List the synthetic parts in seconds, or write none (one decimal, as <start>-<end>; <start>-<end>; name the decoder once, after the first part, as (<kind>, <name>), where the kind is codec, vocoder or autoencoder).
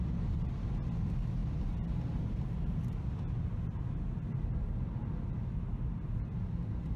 none